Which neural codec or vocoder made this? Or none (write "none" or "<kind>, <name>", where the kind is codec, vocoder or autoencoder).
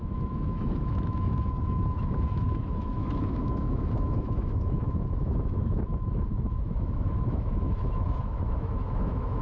autoencoder, DAC-VAE